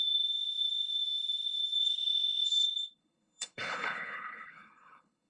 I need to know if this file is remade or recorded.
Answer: remade